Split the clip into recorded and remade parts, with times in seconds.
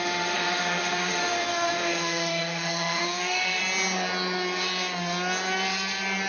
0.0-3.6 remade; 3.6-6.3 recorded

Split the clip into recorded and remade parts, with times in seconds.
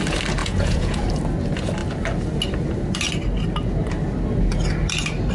0.0-0.4 recorded; 0.4-1.0 remade; 1.0-5.3 recorded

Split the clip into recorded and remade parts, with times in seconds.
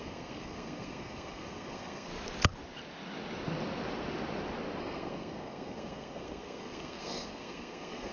0.0-2.1 remade; 2.1-4.8 recorded; 4.8-8.1 remade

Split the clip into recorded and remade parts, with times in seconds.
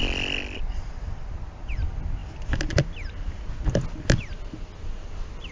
0.0-5.5 recorded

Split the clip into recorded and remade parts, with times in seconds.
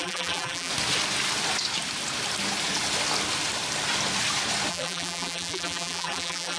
0.0-0.7 remade; 0.7-4.7 recorded; 4.7-6.6 remade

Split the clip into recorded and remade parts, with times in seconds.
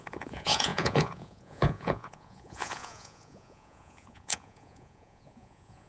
0.0-5.9 remade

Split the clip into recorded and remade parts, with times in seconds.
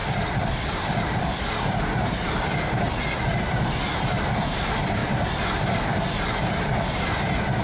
0.0-5.0 remade; 5.0-5.5 recorded; 5.5-6.7 remade; 6.7-7.6 recorded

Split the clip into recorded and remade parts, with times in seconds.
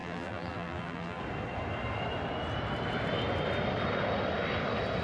0.0-1.2 remade; 1.2-5.0 recorded